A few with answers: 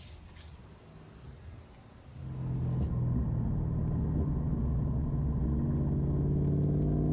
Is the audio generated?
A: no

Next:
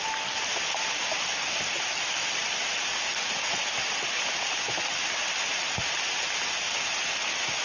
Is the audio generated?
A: no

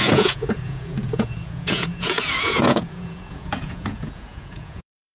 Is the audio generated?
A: yes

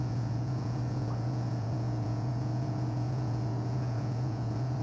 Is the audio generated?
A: yes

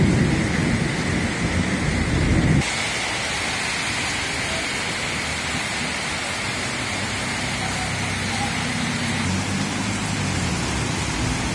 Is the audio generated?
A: no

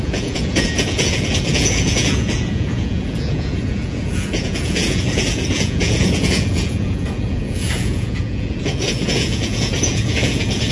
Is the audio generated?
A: yes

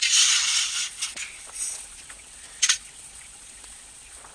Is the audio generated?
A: yes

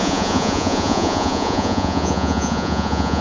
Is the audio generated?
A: yes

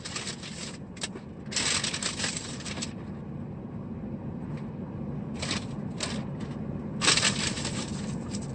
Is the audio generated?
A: no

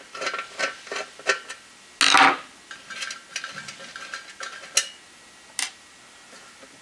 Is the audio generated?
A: no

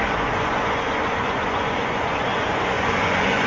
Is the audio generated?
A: yes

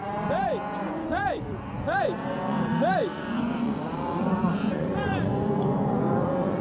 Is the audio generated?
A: yes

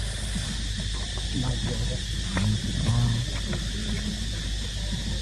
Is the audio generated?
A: no